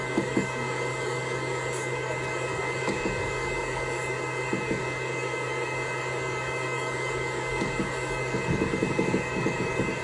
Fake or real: fake